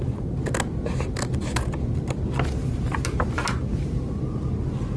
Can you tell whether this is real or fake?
real